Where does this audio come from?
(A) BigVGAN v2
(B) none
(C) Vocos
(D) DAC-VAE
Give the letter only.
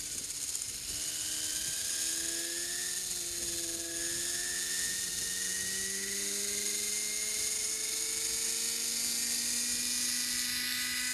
B